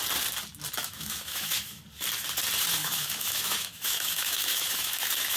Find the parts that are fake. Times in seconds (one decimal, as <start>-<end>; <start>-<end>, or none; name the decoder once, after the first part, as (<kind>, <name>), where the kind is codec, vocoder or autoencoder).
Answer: 0.8-1.8 (autoencoder, DAC-VAE); 2.8-5.4